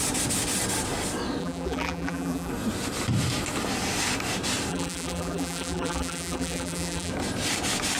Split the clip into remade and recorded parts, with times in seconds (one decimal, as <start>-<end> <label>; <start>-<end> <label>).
0.0-1.4 recorded; 1.4-2.5 remade; 2.5-4.7 recorded; 4.7-7.1 remade; 7.1-8.0 recorded